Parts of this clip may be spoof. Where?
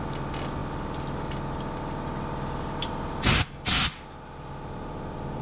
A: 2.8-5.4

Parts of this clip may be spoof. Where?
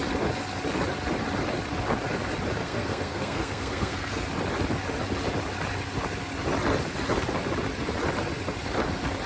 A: 2.6-4.2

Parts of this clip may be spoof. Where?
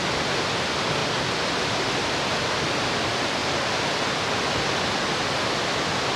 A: none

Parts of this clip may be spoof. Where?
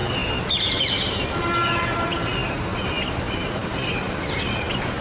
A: none